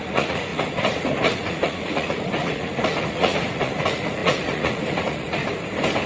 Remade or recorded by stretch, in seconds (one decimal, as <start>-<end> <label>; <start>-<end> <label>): 0.0-5.4 remade; 5.4-6.1 recorded